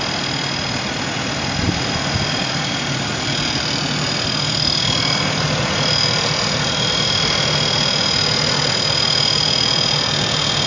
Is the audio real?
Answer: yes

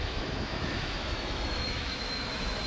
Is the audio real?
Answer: no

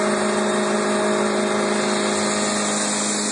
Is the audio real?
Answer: yes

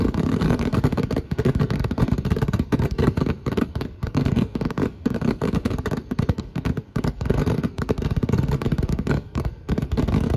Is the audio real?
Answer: no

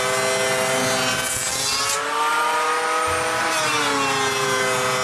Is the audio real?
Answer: yes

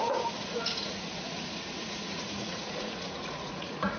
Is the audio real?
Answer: no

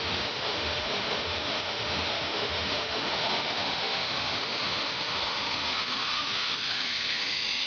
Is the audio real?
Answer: no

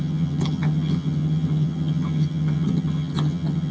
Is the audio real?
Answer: no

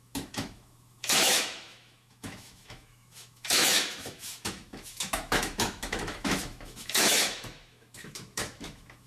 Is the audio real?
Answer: no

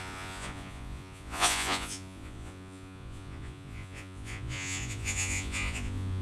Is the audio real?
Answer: no